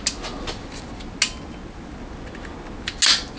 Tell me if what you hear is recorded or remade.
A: recorded